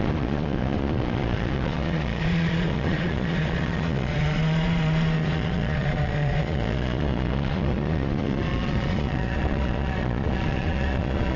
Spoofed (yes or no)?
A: yes